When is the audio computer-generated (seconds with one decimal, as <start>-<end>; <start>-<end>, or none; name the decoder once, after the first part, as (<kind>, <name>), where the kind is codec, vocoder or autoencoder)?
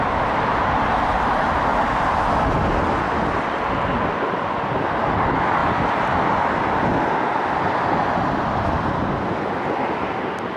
none